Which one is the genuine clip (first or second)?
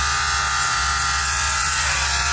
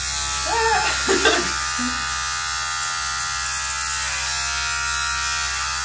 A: second